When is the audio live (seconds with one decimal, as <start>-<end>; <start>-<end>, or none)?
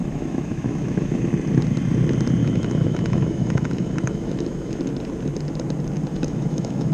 1.3-2.4; 4.8-6.1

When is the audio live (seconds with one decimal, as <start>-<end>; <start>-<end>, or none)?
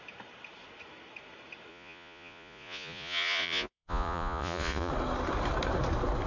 0.0-1.7; 4.9-6.3